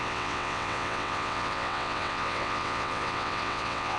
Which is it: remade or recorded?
remade